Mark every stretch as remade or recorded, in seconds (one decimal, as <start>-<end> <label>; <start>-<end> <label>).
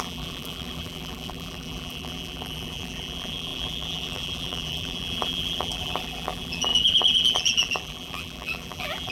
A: 0.0-9.1 remade